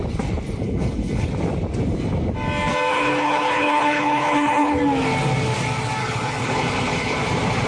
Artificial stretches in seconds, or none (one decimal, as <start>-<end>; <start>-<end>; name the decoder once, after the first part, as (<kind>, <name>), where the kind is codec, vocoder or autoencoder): 0.6-1.3 (codec, HILCodec); 2.9-4.8; 6.0-7.2